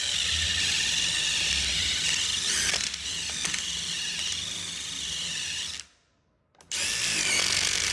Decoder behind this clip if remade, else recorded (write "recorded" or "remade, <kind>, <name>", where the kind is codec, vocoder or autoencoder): recorded